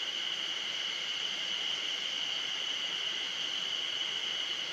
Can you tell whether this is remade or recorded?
recorded